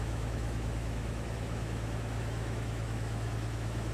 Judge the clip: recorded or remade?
remade